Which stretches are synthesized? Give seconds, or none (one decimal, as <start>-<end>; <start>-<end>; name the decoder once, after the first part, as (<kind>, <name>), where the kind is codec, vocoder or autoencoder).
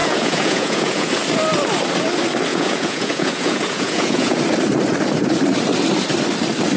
0.0-1.1 (vocoder, Vocos); 2.5-4.4